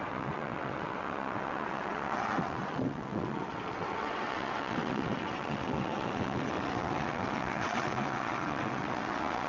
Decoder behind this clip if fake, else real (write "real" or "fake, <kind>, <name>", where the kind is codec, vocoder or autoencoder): fake, vocoder, WaveNeXt